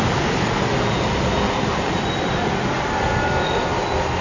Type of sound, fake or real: real